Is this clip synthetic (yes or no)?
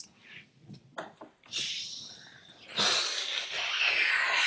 no